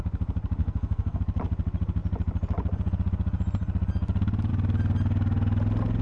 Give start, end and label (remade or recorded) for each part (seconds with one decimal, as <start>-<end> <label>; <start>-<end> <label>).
0.0-0.6 recorded; 0.6-1.2 remade; 1.2-6.0 recorded